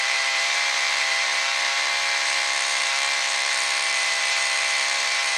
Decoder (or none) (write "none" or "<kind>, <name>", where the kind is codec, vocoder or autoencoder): vocoder, BigVGAN v2